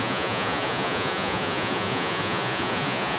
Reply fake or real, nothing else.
fake